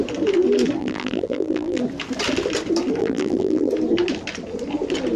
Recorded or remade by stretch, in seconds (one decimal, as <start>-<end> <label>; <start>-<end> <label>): 0.0-0.8 recorded; 0.8-1.8 remade; 1.8-3.0 recorded; 3.0-3.7 remade; 3.7-5.2 recorded